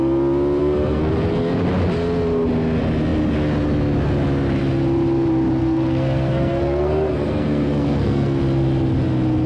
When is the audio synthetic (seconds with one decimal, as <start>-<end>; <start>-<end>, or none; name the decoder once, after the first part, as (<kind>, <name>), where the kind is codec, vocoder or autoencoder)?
0.6-1.1 (codec, SNAC); 5.6-8.4